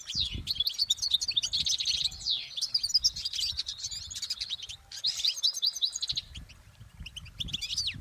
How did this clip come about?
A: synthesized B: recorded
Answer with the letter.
A